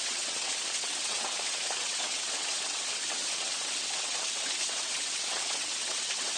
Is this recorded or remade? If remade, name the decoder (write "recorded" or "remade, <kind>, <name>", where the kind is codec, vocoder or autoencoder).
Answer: remade, vocoder, WaveNeXt